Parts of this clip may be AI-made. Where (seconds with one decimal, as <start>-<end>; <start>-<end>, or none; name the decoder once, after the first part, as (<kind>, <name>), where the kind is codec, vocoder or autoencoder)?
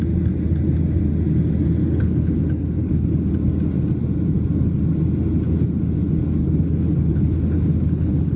1.8-2.4 (codec, HILCodec); 2.8-3.3; 6.4-8.4